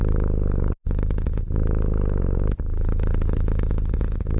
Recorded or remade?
recorded